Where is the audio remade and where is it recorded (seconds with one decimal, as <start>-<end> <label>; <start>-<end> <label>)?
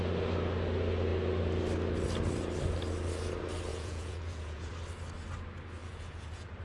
0.0-3.7 recorded; 3.7-4.7 remade; 4.7-5.8 recorded; 5.8-6.6 remade